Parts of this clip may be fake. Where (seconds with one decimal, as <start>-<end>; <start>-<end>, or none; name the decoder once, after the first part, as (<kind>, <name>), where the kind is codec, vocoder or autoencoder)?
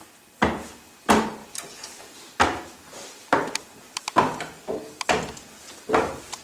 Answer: 1.4-3.9 (vocoder, BigVGAN v2)